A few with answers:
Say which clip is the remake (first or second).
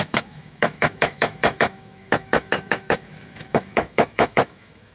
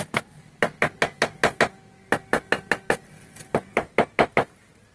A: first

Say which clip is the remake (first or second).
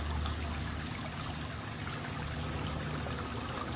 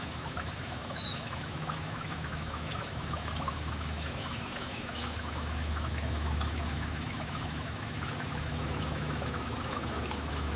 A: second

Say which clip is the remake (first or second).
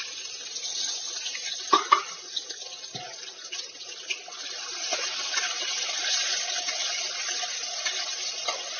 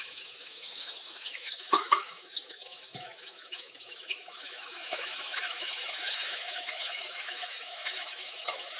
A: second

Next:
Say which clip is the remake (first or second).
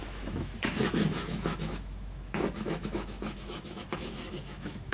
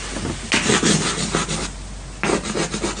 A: first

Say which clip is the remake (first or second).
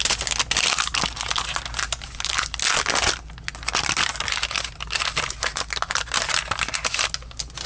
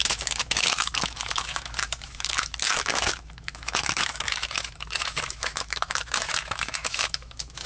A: second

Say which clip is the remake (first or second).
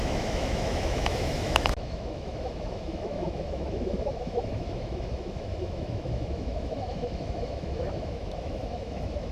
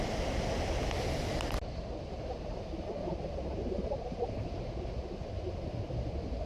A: first